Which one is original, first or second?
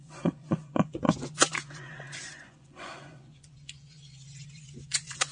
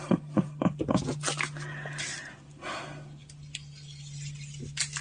second